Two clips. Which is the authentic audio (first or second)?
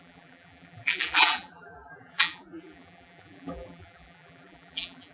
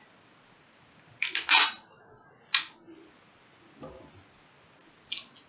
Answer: second